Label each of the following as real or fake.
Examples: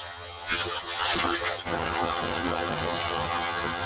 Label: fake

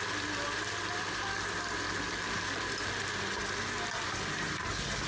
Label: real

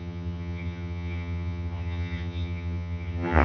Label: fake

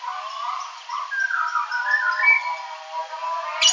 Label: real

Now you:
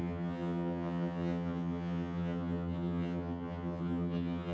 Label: fake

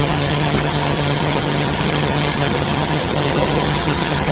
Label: fake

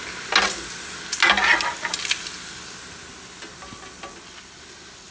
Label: real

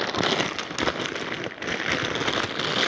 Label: real